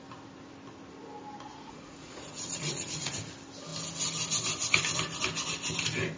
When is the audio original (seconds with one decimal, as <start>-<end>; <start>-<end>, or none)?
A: 0.0-1.5; 3.2-6.2